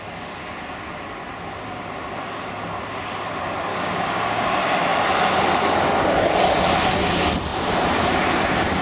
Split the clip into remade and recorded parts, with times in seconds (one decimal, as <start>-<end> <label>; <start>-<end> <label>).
0.0-3.7 recorded; 3.7-4.5 remade; 4.5-8.8 recorded